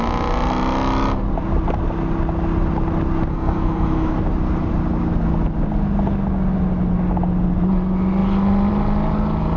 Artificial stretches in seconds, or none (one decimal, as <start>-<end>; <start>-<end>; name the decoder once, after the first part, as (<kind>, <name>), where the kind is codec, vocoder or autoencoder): 3.3-4.1 (codec, SNAC)

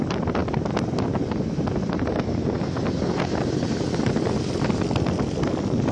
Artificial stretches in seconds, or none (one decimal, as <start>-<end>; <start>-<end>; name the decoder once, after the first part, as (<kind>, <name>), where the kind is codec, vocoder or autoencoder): 0.0-0.4 (vocoder, BigVGAN v2); 3.5-5.9